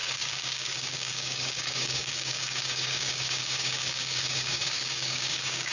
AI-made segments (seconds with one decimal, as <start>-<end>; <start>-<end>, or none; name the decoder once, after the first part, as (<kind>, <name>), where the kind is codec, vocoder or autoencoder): 0.0-5.7 (codec, DAC)